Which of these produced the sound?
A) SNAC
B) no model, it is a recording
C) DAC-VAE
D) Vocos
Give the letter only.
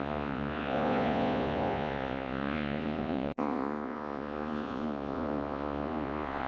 D